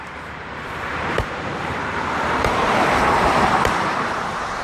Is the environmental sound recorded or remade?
remade